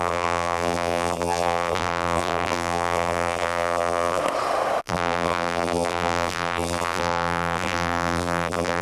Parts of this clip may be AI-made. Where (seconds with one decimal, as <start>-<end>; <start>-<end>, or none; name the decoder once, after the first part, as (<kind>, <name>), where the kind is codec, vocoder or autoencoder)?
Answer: 0.0-4.2 (vocoder, BigVGAN v2); 4.8-8.8